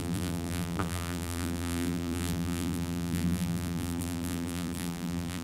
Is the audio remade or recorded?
remade